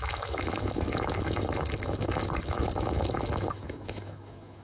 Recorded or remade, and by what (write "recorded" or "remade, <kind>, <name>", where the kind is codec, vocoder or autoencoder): remade, autoencoder, DAC-VAE